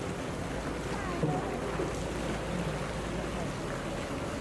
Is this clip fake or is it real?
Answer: real